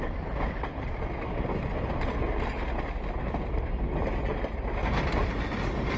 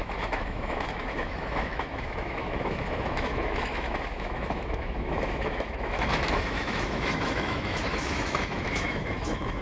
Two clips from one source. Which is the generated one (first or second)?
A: second